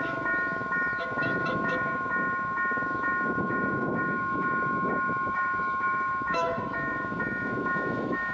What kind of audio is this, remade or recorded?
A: remade